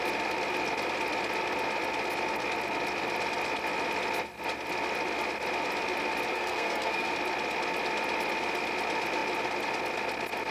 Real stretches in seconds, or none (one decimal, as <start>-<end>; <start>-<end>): 0.0-6.3; 7.1-10.5